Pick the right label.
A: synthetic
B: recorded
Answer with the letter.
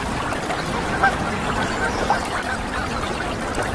B